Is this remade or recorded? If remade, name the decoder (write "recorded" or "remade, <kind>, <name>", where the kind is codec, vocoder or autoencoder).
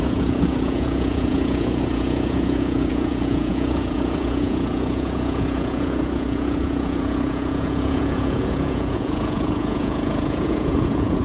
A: remade, vocoder, Vocos